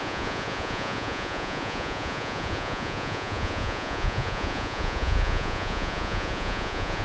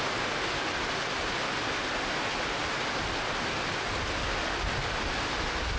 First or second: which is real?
second